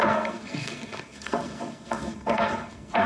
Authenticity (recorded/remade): remade